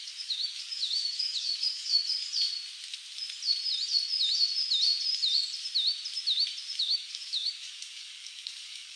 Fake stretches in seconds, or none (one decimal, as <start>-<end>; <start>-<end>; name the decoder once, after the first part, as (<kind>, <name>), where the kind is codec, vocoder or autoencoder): 0.0-2.2 (codec, DAC); 6.8-9.0

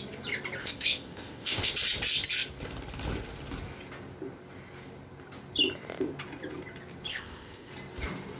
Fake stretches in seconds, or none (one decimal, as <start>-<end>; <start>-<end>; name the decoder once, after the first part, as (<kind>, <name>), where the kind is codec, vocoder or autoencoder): 0.6-1.7 (codec, ZipCodec); 7.1-7.7

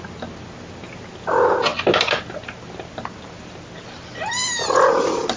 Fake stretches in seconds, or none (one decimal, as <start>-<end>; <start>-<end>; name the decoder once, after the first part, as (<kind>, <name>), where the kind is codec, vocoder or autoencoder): none

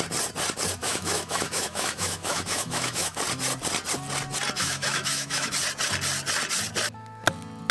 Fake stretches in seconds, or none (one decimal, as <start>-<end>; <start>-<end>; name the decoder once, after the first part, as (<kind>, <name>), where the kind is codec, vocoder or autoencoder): 0.8-3.2 (autoencoder, DAC-VAE); 4.6-5.5